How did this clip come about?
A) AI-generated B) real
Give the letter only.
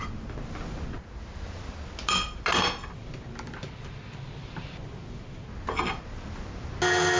B